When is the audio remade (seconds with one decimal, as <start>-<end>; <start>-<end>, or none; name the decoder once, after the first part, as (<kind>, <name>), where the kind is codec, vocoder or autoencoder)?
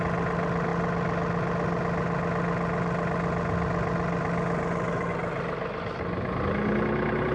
none